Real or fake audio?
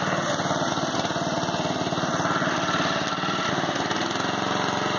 real